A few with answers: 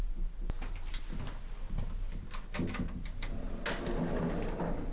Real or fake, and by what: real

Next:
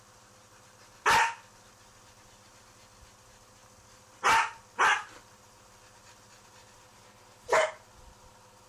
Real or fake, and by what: real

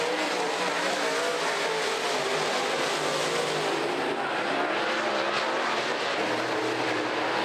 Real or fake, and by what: real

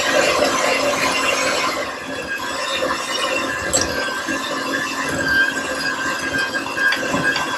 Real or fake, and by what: real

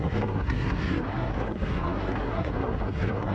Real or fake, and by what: fake, codec, SNAC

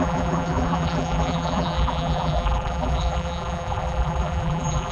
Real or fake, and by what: fake, vocoder, BigVGAN v2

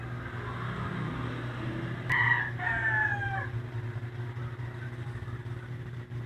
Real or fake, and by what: real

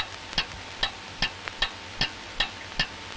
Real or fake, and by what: real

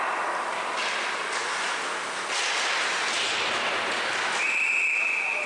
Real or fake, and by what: real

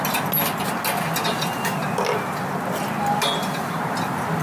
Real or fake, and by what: real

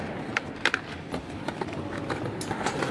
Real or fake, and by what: real